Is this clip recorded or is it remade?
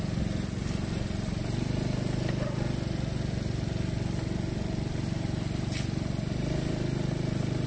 recorded